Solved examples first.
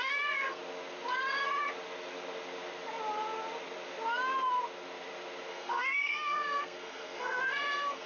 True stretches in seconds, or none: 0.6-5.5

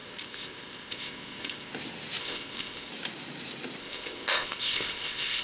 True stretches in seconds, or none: 1.7-2.2; 2.9-3.8

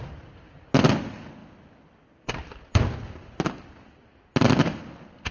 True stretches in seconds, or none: 0.0-5.3